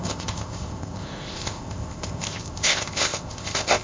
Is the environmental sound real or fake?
fake